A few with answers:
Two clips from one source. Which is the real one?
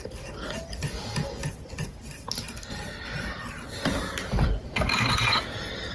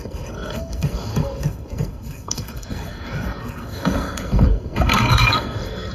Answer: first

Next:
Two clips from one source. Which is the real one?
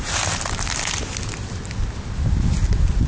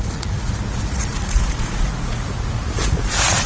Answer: first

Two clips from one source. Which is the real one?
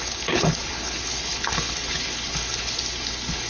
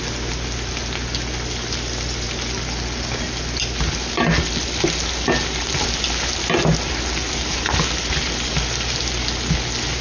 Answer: second